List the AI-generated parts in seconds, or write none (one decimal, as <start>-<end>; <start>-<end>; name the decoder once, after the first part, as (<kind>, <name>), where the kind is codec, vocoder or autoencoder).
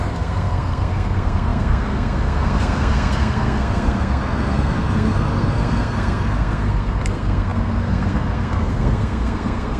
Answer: 0.0-9.8 (codec, SNAC)